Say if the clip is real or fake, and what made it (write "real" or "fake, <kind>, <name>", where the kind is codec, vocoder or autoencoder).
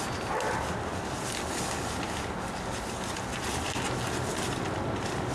real